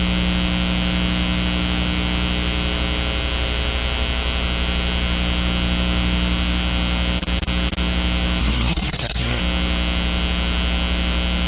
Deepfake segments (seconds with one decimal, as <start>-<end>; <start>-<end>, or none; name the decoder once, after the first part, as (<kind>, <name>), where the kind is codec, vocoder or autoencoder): 8.4-9.4 (codec, SNAC)